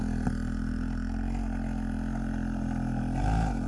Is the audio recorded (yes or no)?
yes